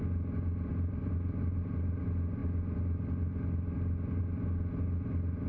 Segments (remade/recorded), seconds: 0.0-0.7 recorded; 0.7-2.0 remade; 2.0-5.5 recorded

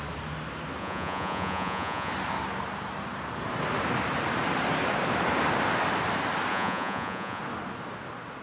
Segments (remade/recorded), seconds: 0.0-0.8 recorded; 0.8-2.1 remade; 2.1-6.5 recorded; 6.5-7.4 remade; 7.4-8.4 recorded

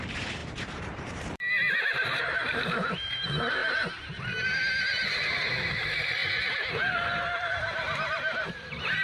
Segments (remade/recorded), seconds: 0.0-6.2 remade; 6.2-7.2 recorded; 7.2-9.0 remade

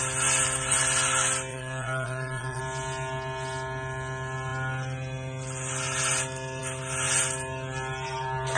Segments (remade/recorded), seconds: 0.0-1.5 recorded; 1.5-2.6 remade; 2.6-8.6 recorded

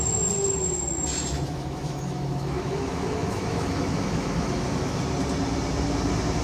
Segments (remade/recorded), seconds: 0.0-1.3 recorded; 1.3-5.0 remade; 5.0-6.4 recorded